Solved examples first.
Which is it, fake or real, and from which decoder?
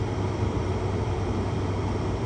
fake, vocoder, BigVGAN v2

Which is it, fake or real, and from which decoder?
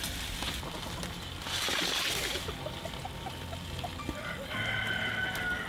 real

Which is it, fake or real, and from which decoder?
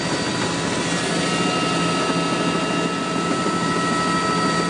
real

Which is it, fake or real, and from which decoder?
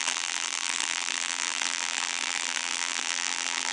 fake, vocoder, BigVGAN v2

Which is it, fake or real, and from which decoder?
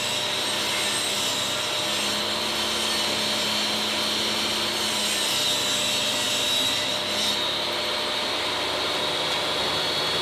real